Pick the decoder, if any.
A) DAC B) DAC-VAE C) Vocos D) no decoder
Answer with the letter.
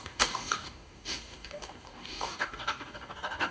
A